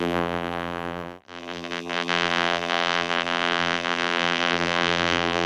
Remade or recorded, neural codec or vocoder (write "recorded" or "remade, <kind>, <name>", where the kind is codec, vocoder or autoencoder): remade, vocoder, BigVGAN v2